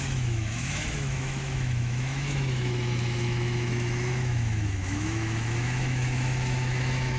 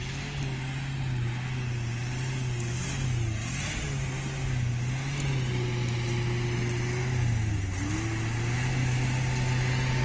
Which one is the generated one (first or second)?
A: first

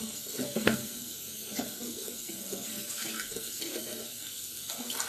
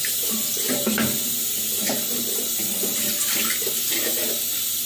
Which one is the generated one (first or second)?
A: first